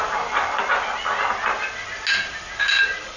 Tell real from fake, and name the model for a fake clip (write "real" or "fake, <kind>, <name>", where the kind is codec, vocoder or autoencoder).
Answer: real